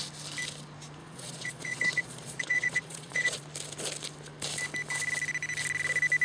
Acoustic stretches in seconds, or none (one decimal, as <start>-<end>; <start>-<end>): 0.0-1.0; 3.4-6.2